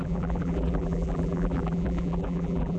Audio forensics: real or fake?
fake